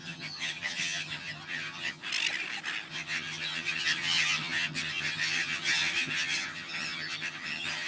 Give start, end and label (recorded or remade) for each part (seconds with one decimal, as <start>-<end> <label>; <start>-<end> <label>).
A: 0.0-2.0 remade; 2.0-2.9 recorded; 2.9-7.9 remade